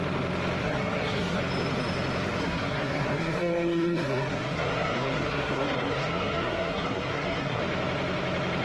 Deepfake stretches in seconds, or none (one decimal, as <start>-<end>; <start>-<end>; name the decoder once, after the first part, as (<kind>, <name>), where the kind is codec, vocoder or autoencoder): 0.6-1.4 (codec, SNAC); 2.4-7.6